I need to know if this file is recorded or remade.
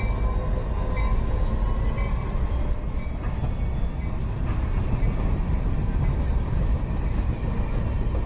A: recorded